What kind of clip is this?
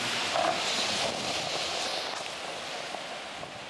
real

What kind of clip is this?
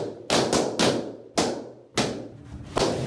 real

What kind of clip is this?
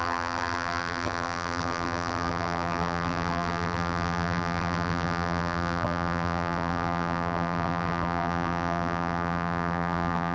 fake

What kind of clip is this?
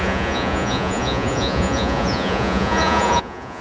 fake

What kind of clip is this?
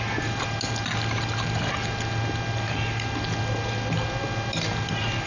real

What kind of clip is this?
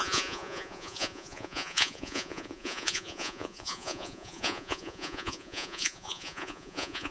fake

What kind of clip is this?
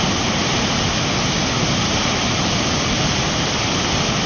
real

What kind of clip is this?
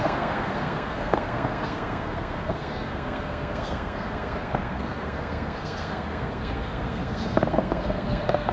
fake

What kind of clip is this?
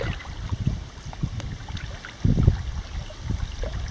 real